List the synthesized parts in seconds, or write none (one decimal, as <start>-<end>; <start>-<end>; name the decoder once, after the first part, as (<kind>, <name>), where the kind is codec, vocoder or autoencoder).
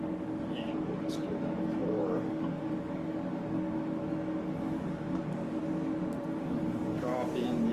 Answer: 0.0-5.6 (codec, DAC); 6.5-7.1